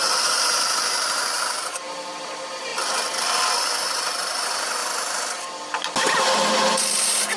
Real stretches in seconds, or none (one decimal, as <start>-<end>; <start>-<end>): 2.7-3.6; 4.8-6.0